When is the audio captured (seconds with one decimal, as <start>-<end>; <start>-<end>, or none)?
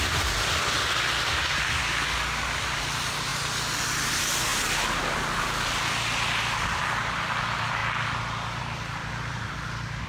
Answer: 0.0-10.1